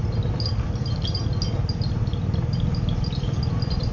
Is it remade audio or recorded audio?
recorded